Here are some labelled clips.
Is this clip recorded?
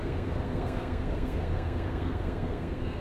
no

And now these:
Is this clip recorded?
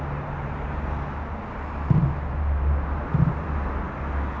yes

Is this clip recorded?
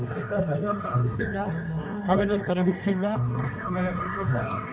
no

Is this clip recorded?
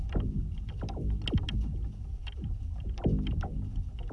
yes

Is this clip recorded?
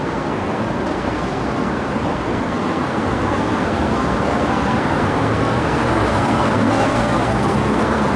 no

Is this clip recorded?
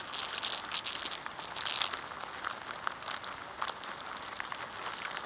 yes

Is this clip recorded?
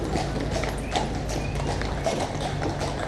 yes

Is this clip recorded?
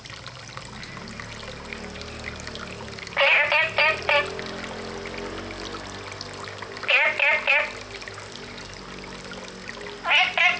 yes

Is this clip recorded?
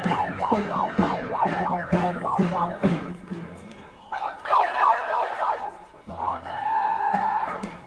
no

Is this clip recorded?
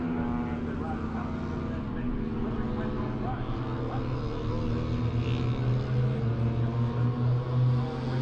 yes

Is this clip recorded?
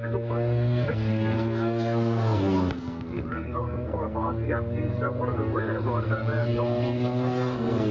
no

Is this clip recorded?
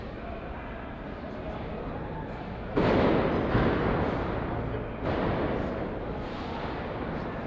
yes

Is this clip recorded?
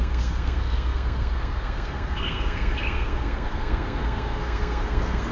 no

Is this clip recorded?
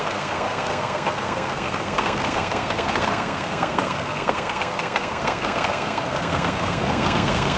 no